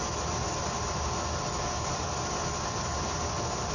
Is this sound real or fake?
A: fake